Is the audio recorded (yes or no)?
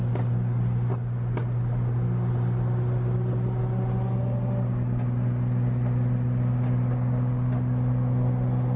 yes